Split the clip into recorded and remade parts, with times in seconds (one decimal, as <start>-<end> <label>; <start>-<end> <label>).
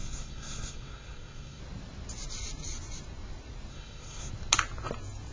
0.0-1.6 remade; 1.6-3.7 recorded; 3.7-4.3 remade; 4.3-5.3 recorded